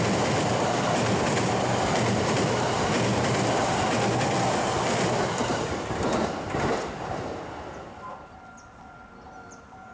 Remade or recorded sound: recorded